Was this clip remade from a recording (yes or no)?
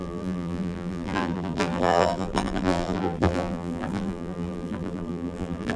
yes